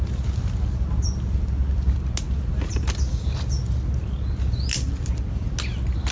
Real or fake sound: real